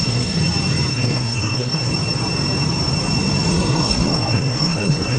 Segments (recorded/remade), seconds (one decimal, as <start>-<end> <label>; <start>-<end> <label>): 0.0-0.4 remade; 0.4-0.9 recorded; 0.9-1.9 remade; 1.9-3.5 recorded; 3.5-5.2 remade